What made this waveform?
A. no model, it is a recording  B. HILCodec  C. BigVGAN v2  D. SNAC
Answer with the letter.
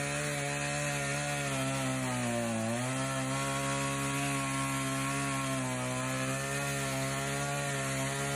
A